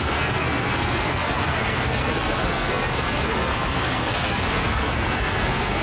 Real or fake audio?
fake